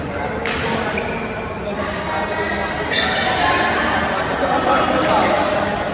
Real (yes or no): yes